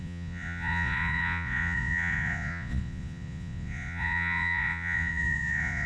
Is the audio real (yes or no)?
no